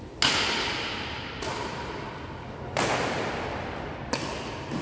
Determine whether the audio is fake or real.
real